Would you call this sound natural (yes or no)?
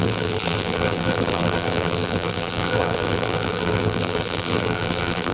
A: no